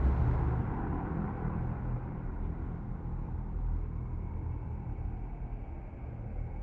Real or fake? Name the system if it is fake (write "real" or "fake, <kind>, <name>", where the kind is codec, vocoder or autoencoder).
real